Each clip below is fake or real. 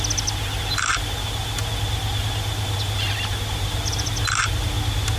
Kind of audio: real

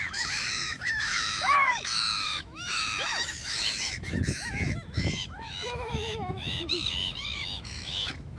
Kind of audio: fake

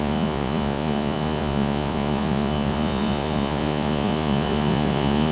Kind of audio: fake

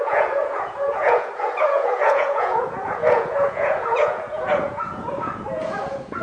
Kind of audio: fake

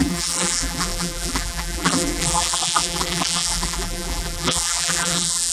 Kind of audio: fake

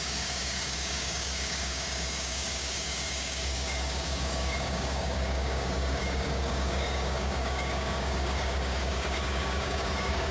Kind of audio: fake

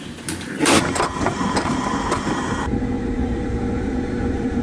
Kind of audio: fake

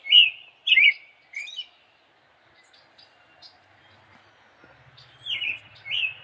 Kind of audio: real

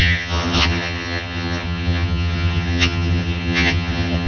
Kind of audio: fake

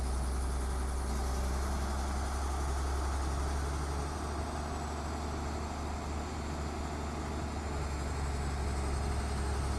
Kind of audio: real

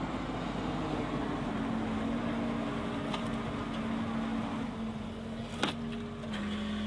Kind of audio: real